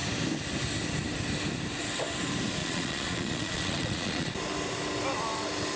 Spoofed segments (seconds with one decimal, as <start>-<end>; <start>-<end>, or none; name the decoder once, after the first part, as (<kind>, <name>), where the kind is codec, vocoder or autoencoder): 2.6-4.3 (vocoder, Vocos)